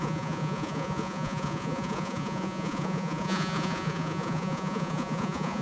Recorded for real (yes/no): no